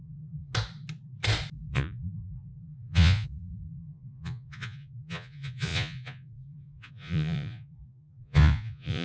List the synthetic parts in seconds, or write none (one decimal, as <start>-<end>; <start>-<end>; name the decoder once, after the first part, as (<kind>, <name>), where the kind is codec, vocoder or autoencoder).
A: 0.0-0.5 (vocoder, Vocos); 1.7-9.0